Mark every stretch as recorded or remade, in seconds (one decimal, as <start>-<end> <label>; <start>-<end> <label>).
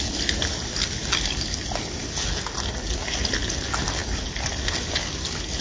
0.0-5.6 recorded